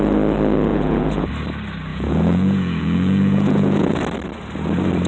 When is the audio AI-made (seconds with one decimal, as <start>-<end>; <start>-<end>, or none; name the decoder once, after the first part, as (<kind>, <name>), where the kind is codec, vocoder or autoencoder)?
0.7-1.3 (vocoder, Vocos); 1.9-4.0